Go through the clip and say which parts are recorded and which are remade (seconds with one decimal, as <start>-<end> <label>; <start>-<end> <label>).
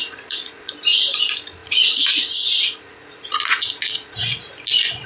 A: 0.0-0.7 remade; 0.7-1.6 recorded; 1.6-4.5 remade; 4.5-5.1 recorded